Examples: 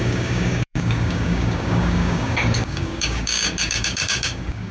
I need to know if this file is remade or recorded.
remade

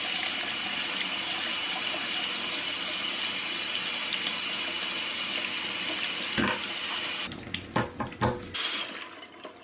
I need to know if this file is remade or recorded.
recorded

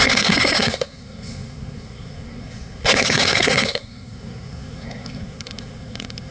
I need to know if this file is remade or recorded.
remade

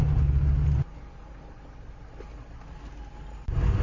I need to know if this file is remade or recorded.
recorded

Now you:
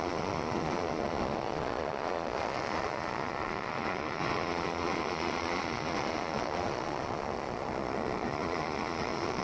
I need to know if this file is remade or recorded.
remade